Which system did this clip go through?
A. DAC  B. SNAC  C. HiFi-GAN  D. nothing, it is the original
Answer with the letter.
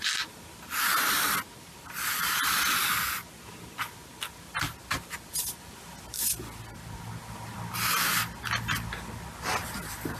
D